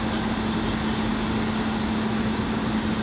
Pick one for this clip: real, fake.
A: real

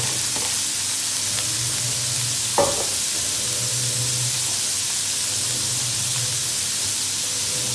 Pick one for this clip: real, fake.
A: real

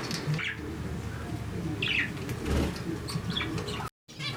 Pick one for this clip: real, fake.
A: real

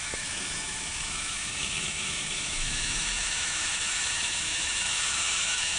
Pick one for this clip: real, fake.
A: fake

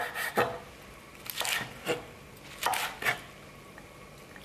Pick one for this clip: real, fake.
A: real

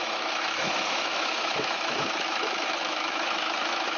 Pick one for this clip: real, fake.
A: fake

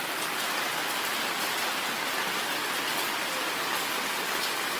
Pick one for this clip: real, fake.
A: real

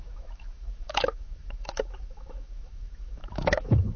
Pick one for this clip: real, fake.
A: fake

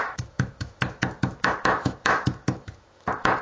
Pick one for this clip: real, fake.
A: fake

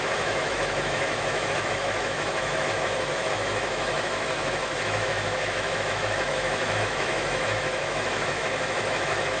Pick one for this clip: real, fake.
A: fake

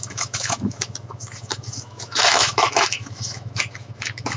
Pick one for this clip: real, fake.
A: fake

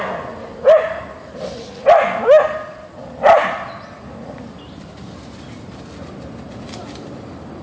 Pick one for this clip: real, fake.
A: real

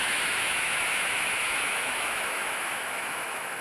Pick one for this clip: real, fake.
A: fake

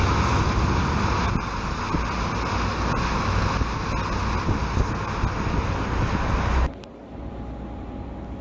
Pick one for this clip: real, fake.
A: real